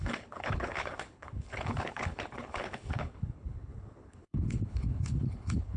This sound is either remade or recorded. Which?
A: remade